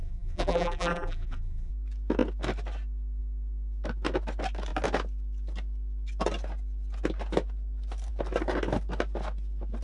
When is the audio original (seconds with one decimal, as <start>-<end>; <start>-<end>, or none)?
1.7-9.8